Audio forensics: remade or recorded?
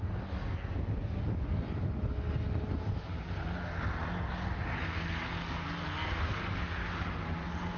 recorded